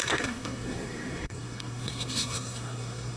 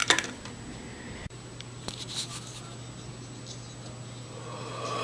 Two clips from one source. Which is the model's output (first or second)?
first